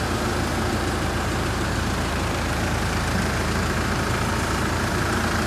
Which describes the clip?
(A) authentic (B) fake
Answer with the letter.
B